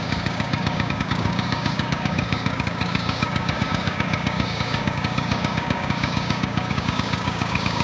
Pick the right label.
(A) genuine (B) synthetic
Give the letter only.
B